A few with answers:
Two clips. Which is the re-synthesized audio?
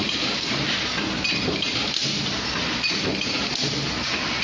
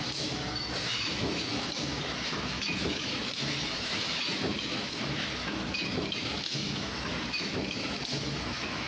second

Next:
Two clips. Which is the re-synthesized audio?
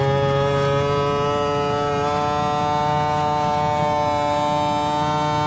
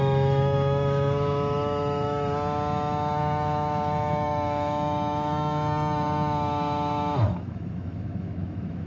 second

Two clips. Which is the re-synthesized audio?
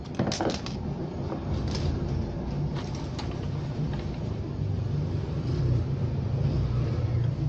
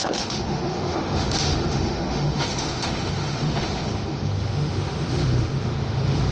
second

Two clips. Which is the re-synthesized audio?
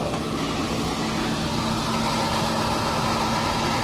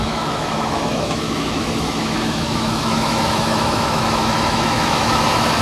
second